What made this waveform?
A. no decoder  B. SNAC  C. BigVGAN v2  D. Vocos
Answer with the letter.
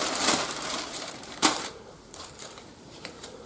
C